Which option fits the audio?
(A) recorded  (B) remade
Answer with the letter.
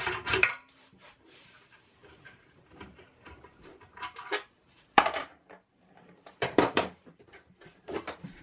B